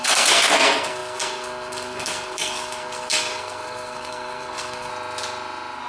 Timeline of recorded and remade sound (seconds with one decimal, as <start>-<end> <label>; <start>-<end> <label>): 0.0-4.9 remade; 4.9-5.9 recorded